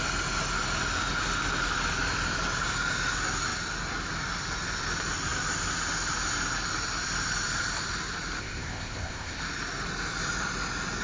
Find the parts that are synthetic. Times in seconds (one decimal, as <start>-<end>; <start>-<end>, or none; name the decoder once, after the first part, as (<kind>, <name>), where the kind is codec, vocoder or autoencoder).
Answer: 8.4-9.4 (codec, ZipCodec)